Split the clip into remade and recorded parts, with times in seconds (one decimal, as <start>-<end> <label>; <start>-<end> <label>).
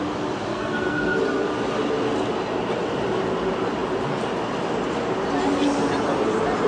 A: 0.0-0.5 recorded; 0.5-1.2 remade; 1.2-6.7 recorded